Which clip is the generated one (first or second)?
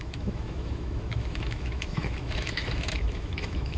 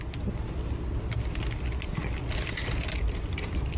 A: first